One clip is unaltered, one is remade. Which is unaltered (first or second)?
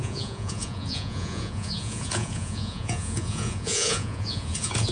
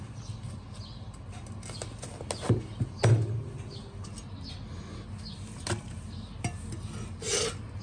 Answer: second